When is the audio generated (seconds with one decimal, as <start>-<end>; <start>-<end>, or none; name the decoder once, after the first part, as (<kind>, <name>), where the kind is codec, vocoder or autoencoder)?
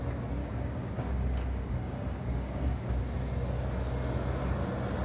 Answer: 0.4-3.0 (codec, DAC)